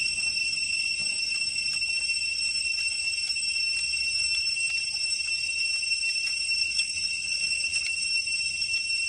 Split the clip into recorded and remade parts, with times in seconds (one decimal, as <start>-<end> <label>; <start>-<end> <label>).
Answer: 0.0-6.6 recorded; 6.6-7.8 remade; 7.8-9.1 recorded